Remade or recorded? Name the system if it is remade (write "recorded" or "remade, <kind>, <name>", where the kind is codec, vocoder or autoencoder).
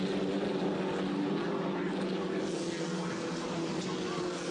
recorded